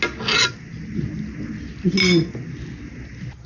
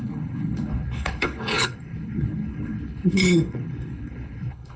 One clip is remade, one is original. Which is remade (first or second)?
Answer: second